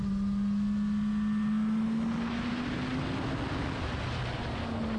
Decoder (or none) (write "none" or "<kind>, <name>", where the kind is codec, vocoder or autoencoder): none